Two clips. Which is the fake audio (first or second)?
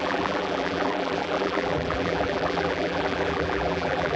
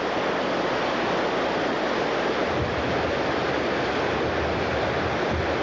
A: first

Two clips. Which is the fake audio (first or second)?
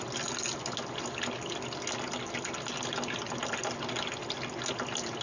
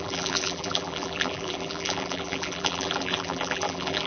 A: second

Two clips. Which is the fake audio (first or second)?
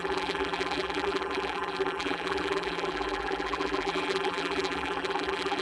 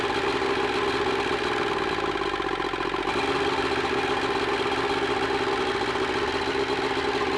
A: first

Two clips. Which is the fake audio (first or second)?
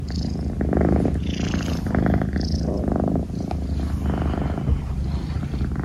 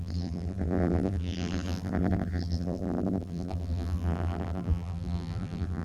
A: second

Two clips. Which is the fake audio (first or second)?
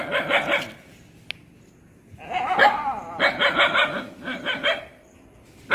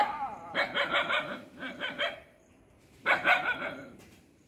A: second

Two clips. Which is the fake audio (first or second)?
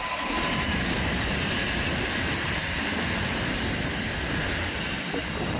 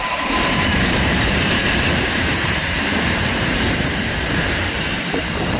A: second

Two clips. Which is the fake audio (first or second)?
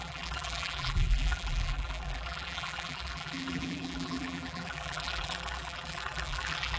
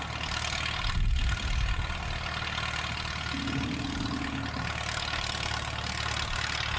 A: first